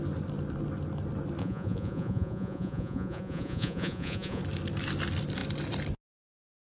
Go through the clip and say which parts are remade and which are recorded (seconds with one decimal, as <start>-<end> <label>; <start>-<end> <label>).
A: 0.0-1.4 recorded; 1.4-4.4 remade; 4.4-6.7 recorded